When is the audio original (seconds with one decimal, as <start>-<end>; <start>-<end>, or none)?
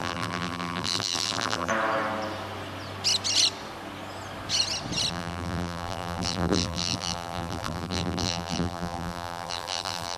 1.7-5.1